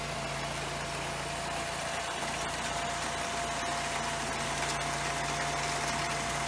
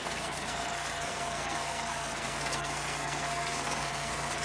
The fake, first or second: second